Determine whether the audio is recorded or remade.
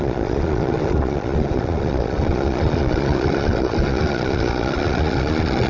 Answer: remade